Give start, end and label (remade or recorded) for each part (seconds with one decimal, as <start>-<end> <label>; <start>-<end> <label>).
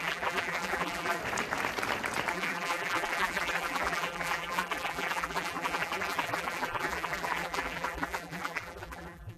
0.0-1.2 remade; 1.2-2.3 recorded; 2.3-9.4 remade